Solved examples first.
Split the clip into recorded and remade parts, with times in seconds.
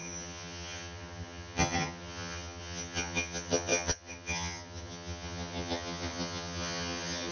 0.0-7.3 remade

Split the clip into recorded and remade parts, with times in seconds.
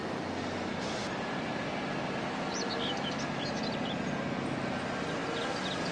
0.0-1.0 recorded; 1.0-1.7 remade; 1.7-5.9 recorded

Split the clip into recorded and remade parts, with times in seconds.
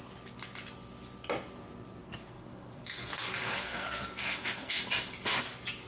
0.0-2.0 recorded; 2.0-4.8 remade; 4.8-5.9 recorded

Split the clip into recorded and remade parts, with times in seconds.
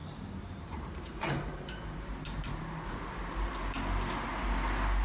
0.0-3.0 remade; 3.0-5.0 recorded